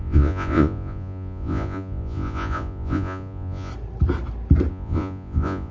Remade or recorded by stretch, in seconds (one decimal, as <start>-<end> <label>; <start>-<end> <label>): 0.0-3.7 remade; 3.7-4.7 recorded; 4.7-5.7 remade